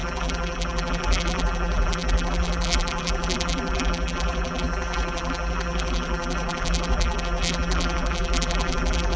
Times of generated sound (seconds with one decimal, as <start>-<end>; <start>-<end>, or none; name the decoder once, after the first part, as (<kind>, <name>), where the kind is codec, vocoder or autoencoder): 0.0-9.2 (vocoder, BigVGAN v2)